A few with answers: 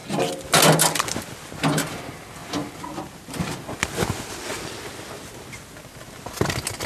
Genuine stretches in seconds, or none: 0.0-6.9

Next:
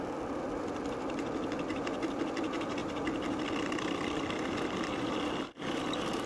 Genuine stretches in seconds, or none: 0.0-6.3

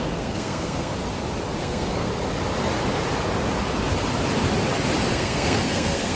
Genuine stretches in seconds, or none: 0.9-1.6; 2.1-5.1

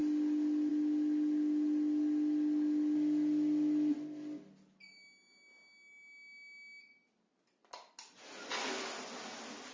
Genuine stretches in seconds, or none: 0.0-9.7

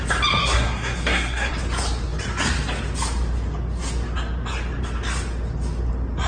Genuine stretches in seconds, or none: 0.0-0.4; 1.5-6.3

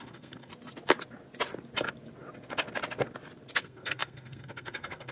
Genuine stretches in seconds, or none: 0.5-3.6

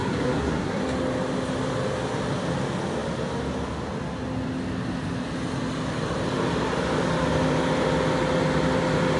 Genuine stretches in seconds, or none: 0.8-9.2

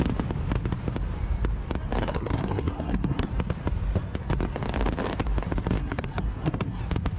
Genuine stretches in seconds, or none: 0.0-2.0; 3.3-5.8; 6.8-7.2